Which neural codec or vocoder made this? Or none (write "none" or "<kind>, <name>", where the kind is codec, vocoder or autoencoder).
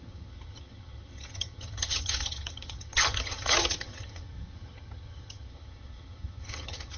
vocoder, HiFi-GAN